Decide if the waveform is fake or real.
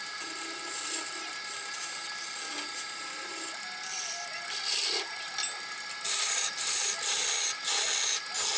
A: real